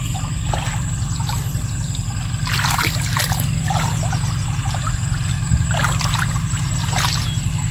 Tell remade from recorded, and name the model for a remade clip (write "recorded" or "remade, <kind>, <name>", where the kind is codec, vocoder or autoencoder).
recorded